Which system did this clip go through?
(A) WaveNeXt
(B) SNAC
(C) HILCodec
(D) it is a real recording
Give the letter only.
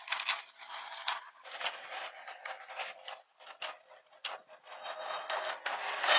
D